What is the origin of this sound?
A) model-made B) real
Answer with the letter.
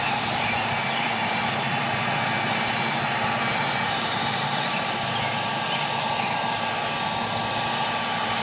A